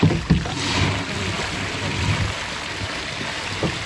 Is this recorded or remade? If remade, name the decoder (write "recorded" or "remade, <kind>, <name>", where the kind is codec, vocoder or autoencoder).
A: recorded